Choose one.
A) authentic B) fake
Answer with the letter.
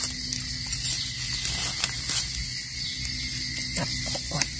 A